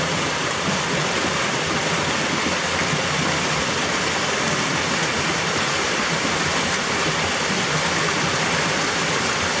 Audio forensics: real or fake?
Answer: real